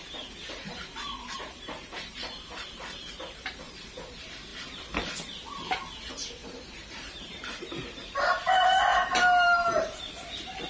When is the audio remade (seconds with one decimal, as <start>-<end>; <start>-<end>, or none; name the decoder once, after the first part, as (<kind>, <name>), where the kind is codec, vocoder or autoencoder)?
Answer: 0.0-3.7 (vocoder, BigVGAN v2); 6.4-7.9; 8.9-10.0